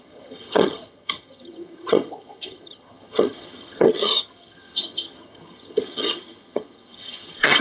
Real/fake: fake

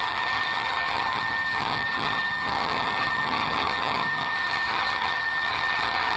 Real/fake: fake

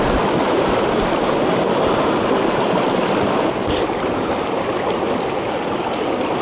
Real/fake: real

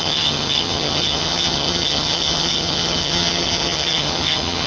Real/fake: fake